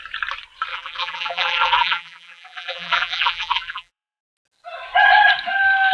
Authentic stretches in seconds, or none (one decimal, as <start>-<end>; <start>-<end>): 0.0-0.7; 4.2-5.9